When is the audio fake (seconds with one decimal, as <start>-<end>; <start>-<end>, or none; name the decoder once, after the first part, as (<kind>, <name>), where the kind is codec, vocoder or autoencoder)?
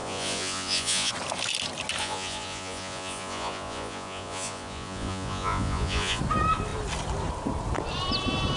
0.0-1.1 (vocoder, Vocos); 2.0-6.2